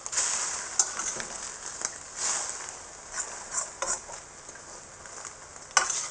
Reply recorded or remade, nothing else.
recorded